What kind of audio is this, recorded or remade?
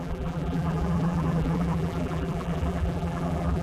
remade